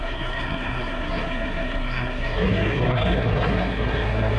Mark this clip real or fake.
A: fake